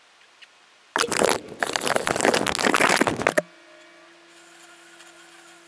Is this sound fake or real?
real